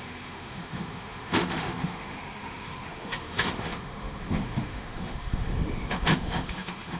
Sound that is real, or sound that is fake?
fake